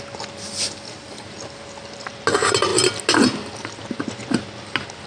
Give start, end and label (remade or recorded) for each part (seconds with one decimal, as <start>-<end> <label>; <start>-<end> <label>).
0.0-5.1 recorded